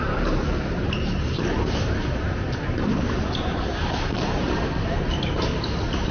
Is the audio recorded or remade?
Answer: remade